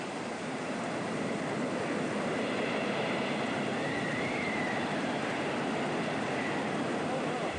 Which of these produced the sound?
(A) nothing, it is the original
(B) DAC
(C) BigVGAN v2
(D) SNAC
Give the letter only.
C